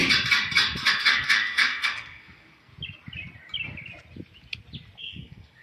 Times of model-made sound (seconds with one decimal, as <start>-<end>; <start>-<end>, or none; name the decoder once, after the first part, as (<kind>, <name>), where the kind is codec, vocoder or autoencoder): 0.9-2.7 (codec, SNAC); 5.0-5.6